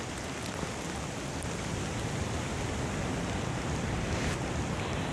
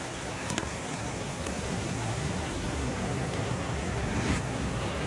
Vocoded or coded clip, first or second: second